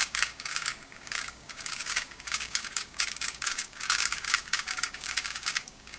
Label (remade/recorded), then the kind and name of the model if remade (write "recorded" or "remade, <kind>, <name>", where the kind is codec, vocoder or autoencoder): remade, codec, DAC